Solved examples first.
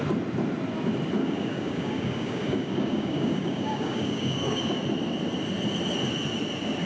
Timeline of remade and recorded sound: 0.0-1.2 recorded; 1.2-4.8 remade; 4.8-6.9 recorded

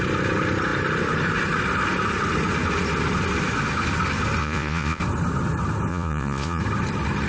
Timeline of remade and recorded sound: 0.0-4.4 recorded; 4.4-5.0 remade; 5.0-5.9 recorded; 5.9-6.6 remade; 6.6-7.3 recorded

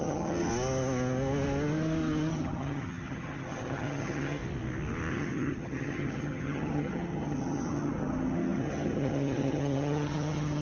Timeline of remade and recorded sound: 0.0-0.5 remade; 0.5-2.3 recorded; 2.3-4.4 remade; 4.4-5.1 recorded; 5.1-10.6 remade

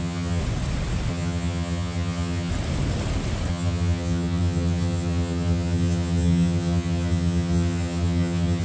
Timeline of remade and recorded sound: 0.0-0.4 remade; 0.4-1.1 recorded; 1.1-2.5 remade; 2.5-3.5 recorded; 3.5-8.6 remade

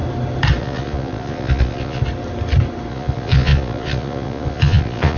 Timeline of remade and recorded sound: 0.0-0.6 recorded; 0.6-2.0 remade; 2.0-2.9 recorded; 2.9-5.2 remade

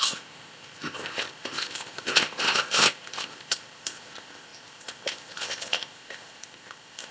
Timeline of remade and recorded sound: 0.0-7.1 remade

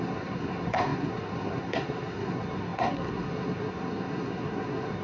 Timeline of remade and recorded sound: 0.0-5.0 remade